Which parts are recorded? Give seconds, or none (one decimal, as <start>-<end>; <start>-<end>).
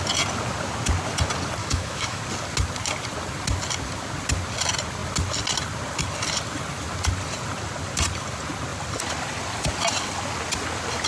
0.0-1.6; 2.2-11.1